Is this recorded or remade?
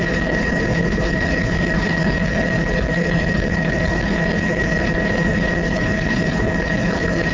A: remade